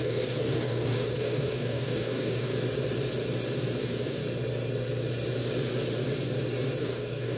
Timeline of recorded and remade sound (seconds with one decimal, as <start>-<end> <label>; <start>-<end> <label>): 0.0-2.5 remade; 2.5-3.8 recorded; 3.8-4.2 remade; 4.2-6.8 recorded; 6.8-7.4 remade